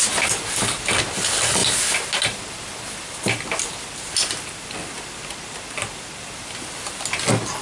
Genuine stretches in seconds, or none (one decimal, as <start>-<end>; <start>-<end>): 0.0-7.6